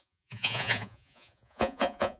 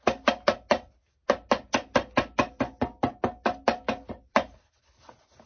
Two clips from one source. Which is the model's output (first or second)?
first